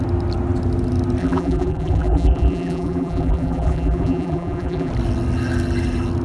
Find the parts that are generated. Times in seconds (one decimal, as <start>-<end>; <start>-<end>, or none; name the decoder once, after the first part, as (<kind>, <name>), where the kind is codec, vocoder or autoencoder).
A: 1.2-4.9 (vocoder, BigVGAN v2)